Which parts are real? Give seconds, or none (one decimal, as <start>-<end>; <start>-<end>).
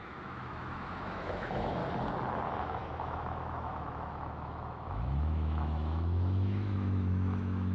1.8-2.6